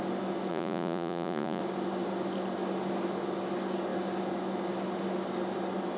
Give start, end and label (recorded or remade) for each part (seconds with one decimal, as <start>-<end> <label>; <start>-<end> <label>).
0.0-0.5 recorded; 0.5-1.6 remade; 1.6-6.0 recorded